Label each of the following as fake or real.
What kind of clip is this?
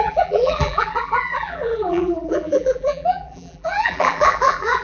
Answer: fake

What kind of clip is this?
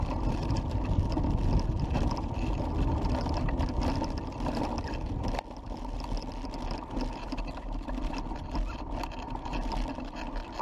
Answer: real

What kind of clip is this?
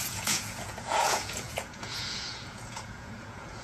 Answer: fake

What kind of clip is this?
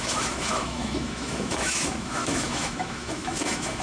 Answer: fake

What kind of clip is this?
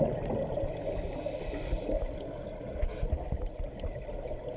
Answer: real